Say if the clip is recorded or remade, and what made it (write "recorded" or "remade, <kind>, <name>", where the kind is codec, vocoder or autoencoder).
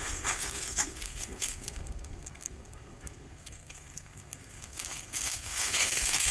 remade, codec, SNAC